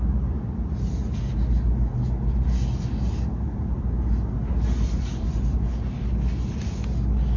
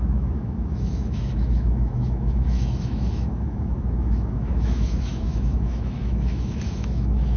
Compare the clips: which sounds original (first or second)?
first